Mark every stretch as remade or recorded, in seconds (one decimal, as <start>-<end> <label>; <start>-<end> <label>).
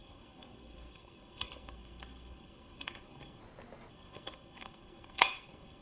0.0-3.4 remade; 3.4-3.9 recorded; 3.9-5.8 remade